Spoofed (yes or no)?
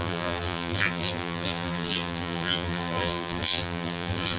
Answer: yes